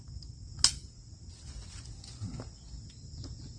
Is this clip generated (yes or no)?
no